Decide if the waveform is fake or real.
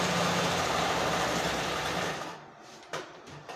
fake